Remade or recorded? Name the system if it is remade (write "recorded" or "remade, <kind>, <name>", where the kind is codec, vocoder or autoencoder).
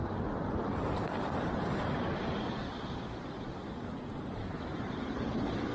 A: remade, vocoder, BigVGAN v2